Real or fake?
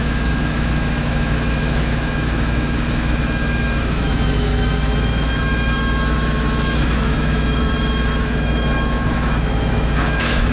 fake